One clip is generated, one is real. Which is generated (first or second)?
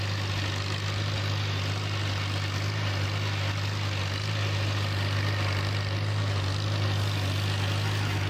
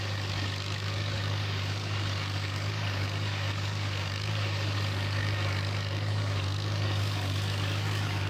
second